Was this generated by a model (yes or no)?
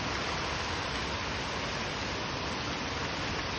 no